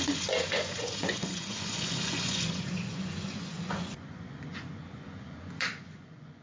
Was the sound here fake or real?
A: fake